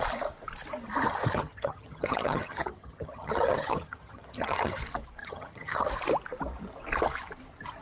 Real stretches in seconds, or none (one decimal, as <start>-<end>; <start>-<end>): 0.0-1.4; 4.8-5.2; 5.9-7.8